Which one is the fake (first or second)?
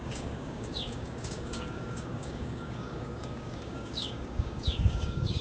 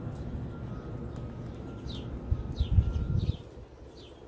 first